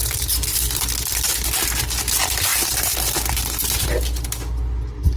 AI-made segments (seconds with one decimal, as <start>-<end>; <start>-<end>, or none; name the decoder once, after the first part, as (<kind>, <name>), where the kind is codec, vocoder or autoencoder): none